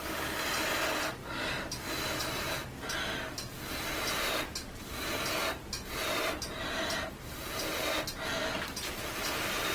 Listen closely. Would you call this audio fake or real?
real